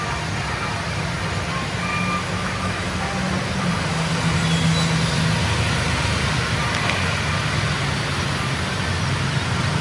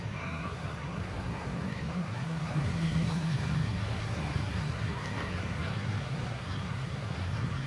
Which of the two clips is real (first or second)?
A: first